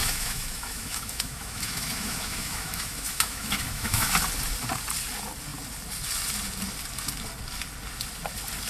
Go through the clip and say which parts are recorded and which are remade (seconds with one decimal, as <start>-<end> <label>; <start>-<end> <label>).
0.0-4.1 remade; 4.1-8.7 recorded